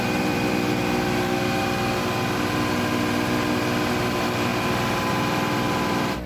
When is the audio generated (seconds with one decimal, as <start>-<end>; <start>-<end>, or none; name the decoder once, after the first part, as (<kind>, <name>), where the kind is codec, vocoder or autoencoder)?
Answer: 0.0-0.8 (vocoder, BigVGAN v2); 4.0-4.5; 5.1-6.3